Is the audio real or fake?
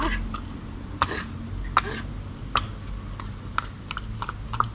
real